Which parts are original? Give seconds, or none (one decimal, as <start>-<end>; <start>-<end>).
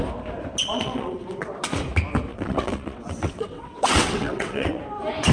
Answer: 0.0-0.6; 1.5-2.3; 4.8-5.3